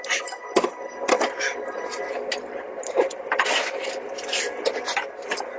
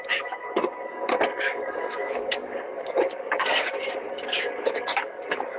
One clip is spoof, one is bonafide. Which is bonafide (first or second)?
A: first